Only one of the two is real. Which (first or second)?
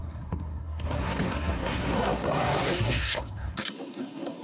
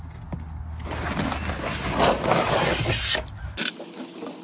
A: second